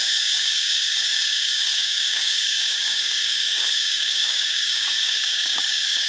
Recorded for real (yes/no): no